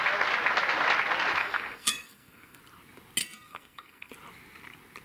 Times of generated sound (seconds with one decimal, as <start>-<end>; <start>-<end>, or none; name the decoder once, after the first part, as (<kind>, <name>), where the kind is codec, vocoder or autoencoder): 1.4-2.6 (codec, SNAC); 3.2-4.1